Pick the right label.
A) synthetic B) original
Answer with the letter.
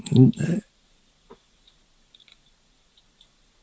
A